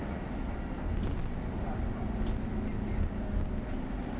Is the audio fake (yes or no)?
no